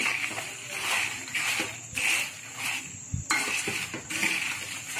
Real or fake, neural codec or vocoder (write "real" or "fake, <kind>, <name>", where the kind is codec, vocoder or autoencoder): real